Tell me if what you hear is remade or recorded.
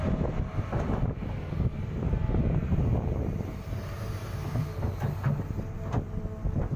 recorded